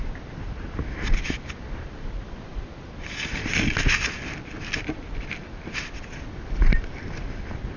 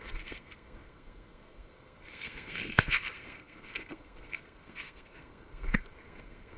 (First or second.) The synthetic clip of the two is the second